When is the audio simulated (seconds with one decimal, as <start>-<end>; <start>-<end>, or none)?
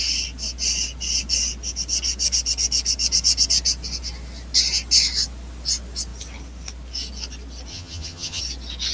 7.7-8.4